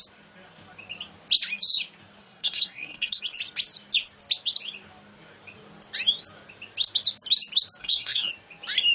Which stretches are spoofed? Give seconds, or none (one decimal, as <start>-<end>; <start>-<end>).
2.2-3.2; 7.8-8.3